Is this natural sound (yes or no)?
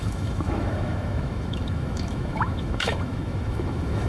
no